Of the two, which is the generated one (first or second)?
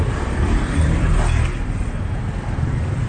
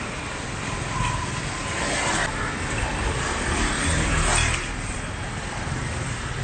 first